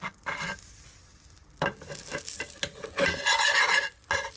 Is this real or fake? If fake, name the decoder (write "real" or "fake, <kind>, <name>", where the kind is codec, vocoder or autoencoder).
real